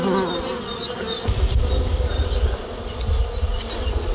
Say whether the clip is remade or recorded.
recorded